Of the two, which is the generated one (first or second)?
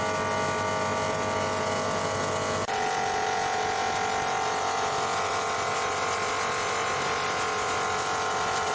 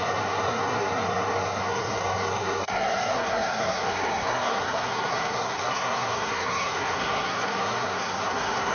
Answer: second